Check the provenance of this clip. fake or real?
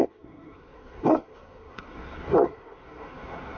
fake